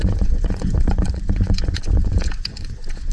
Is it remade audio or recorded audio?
remade